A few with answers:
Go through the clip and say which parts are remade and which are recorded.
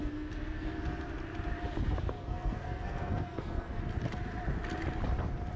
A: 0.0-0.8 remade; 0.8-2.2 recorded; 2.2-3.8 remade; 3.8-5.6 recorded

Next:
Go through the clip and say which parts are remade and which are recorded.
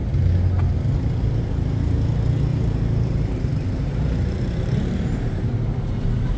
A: 0.0-2.5 recorded; 2.5-5.5 remade; 5.5-6.4 recorded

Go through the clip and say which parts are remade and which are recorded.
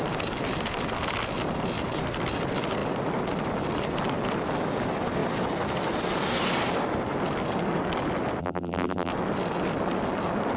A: 0.0-8.4 recorded; 8.4-9.1 remade; 9.1-10.6 recorded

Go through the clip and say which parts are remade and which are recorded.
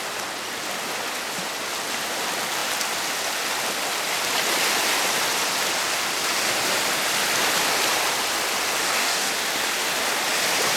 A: 0.0-8.8 recorded; 8.8-9.3 remade; 9.3-10.8 recorded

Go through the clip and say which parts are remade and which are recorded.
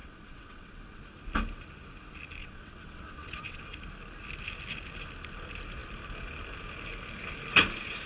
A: 0.0-1.0 remade; 1.0-2.4 recorded; 2.4-3.6 remade; 3.6-8.1 recorded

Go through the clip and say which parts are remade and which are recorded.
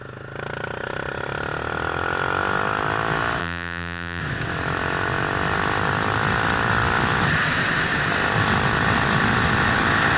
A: 0.0-3.4 recorded; 3.4-4.2 remade; 4.2-10.2 recorded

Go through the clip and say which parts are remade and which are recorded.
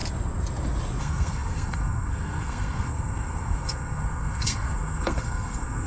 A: 0.0-1.0 recorded; 1.0-5.9 remade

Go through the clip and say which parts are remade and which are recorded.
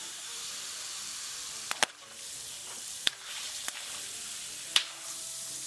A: 0.0-0.5 remade; 0.5-2.6 recorded; 2.6-3.9 remade; 3.9-4.7 recorded; 4.7-5.7 remade